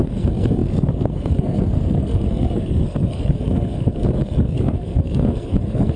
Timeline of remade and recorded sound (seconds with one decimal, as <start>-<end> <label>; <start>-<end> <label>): 0.0-6.0 remade